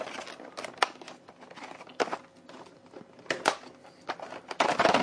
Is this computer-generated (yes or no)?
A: no